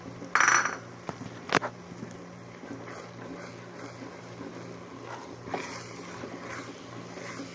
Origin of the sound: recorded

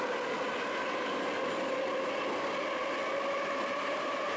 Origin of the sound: recorded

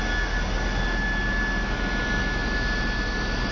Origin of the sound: recorded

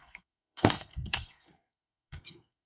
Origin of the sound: remade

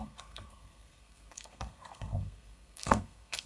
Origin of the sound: remade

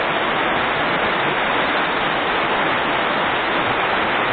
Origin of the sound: recorded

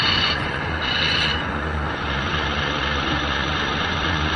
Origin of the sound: remade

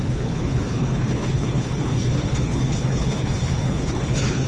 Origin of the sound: remade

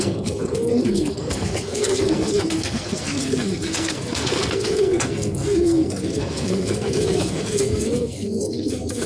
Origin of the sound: remade